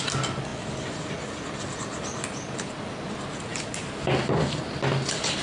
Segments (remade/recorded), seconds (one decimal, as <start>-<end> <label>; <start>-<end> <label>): 0.0-5.4 recorded